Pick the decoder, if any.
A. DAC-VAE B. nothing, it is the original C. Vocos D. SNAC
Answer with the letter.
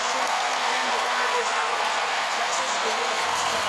D